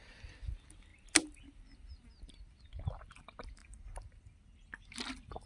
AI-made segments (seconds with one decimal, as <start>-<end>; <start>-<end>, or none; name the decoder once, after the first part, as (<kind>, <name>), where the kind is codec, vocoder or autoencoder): none